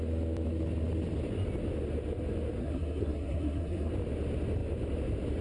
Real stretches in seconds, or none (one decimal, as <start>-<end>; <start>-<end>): 0.0-2.6; 3.9-5.4